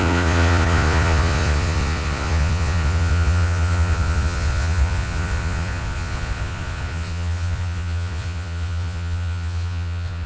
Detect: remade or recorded remade